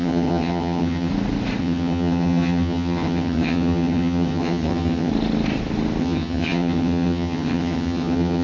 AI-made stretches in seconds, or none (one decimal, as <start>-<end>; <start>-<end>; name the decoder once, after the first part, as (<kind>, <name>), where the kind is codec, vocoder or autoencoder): 0.0-1.1 (vocoder, HiFi-GAN); 1.6-5.1; 6.0-8.4